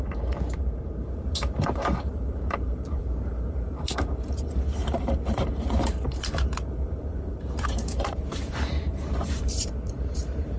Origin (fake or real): fake